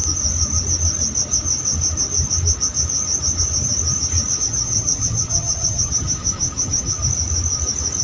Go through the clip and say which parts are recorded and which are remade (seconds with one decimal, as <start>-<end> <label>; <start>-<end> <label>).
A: 0.0-4.4 recorded; 4.4-7.0 remade; 7.0-8.0 recorded